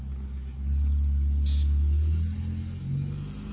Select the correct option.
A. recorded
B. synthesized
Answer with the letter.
A